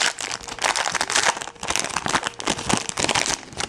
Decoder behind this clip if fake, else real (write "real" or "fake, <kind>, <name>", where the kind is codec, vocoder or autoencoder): real